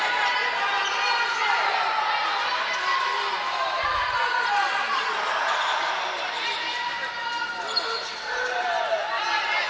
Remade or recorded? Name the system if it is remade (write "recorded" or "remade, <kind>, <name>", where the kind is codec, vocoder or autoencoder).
recorded